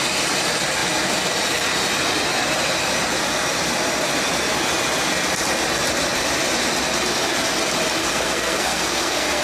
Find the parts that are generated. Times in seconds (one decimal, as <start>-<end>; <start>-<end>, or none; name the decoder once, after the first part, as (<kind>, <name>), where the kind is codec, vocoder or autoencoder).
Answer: 8.0-9.4 (codec, SNAC)